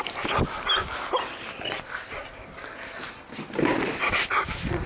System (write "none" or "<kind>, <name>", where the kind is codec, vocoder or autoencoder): none